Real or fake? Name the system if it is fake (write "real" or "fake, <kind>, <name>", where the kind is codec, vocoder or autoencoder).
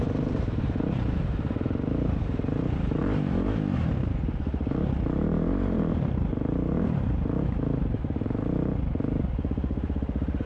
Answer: fake, vocoder, BigVGAN v2